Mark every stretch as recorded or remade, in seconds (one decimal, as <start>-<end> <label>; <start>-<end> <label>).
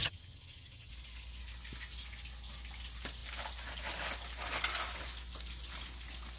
0.0-0.9 remade; 0.9-6.4 recorded